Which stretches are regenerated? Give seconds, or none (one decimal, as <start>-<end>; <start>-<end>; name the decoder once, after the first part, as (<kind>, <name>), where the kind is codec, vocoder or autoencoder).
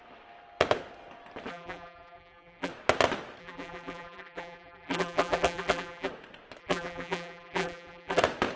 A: 1.5-2.7 (vocoder, BigVGAN v2); 3.4-6.1; 6.6-8.2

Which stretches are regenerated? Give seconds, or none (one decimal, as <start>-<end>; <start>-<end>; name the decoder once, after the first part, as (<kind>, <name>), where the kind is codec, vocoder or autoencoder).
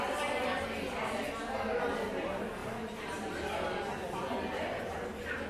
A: none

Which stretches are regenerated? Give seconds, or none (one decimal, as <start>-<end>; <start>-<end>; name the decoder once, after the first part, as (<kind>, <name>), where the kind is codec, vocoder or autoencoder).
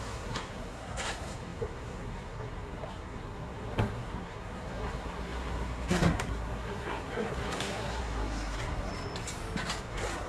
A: 0.0-8.9 (codec, SNAC); 9.8-10.3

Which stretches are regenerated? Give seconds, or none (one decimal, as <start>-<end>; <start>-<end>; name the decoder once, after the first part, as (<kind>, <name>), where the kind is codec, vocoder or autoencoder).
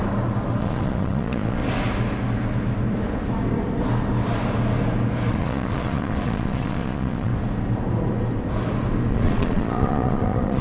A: 0.6-1.6 (vocoder, Vocos); 5.3-7.3; 9.1-10.6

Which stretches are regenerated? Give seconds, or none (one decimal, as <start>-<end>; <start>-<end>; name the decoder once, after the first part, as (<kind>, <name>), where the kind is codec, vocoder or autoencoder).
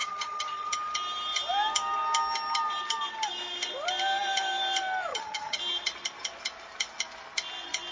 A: 0.0-0.7 (vocoder, HiFi-GAN); 5.1-5.6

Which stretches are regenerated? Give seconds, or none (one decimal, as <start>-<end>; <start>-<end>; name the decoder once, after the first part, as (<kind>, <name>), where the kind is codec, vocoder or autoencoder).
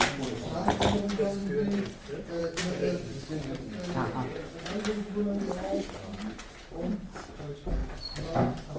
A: none